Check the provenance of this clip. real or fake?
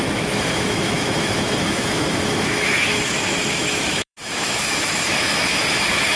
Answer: fake